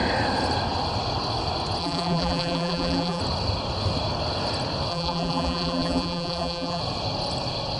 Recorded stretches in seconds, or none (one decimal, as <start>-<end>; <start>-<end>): 0.0-1.8; 3.2-4.9; 6.8-7.8